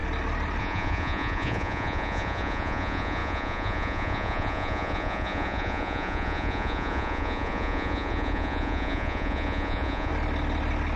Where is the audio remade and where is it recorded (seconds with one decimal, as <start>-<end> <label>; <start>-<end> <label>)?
0.0-0.6 recorded; 0.6-10.1 remade; 10.1-11.0 recorded